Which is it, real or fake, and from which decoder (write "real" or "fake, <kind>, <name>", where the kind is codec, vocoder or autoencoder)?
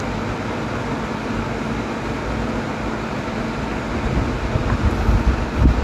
real